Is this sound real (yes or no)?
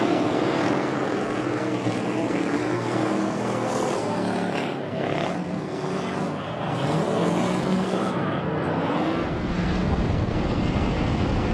no